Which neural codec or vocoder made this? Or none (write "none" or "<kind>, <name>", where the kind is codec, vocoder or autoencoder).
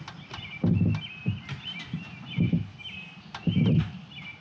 none